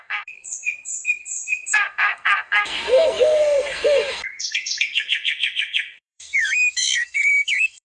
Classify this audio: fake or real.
fake